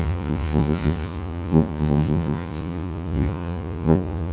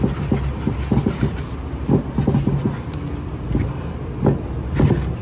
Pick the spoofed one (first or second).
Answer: first